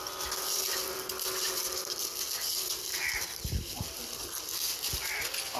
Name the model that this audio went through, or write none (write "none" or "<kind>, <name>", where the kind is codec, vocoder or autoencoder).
none